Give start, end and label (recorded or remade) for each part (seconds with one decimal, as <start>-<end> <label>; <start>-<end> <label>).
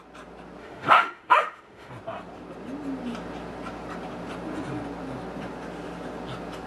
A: 0.0-0.6 recorded; 0.6-1.9 remade; 1.9-6.7 recorded